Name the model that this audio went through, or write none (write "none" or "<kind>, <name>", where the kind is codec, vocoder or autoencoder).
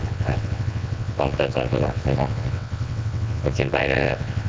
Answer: vocoder, WaveNeXt